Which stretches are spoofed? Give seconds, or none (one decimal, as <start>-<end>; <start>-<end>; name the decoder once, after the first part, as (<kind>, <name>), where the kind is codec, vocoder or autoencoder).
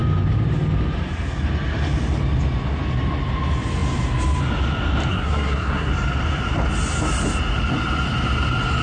5.1-5.9 (codec, SNAC)